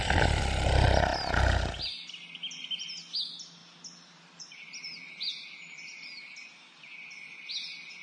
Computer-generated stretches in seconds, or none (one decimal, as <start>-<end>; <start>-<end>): 3.6-5.1